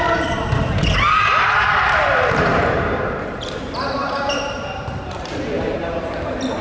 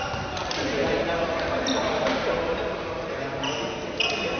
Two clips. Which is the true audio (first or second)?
second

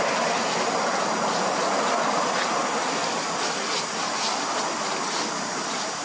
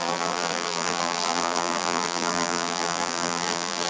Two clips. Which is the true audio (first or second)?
first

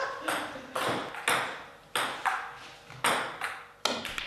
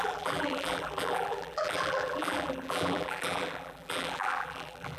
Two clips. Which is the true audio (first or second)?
first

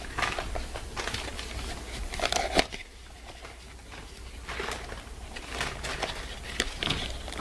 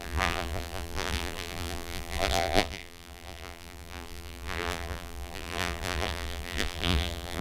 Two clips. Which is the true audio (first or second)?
first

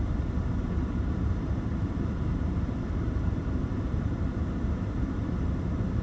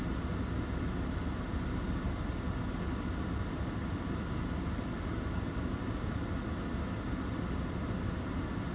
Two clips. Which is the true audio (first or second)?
second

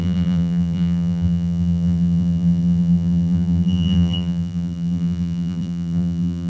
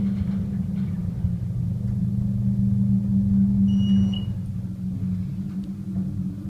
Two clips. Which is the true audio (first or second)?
second